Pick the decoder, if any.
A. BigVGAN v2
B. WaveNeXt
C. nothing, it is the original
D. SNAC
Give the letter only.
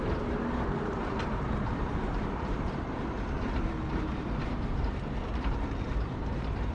A